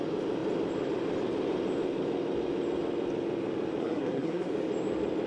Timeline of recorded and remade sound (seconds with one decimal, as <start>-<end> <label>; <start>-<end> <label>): 0.0-3.8 recorded; 3.8-4.5 remade; 4.5-5.3 recorded